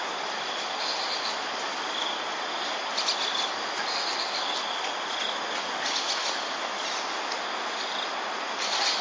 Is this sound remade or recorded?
recorded